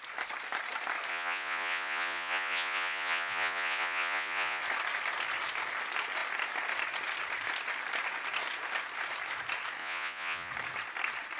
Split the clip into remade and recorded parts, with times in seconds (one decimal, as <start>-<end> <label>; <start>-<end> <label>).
0.0-1.1 recorded; 1.1-4.6 remade; 4.6-9.8 recorded; 9.8-10.5 remade; 10.5-11.4 recorded